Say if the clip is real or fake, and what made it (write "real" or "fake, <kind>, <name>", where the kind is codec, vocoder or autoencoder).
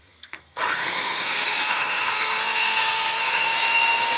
fake, codec, SNAC